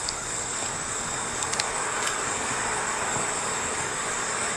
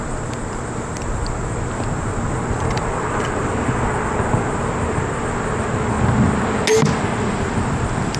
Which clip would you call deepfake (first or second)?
first